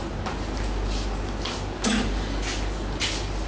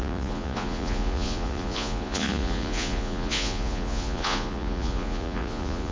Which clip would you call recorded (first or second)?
first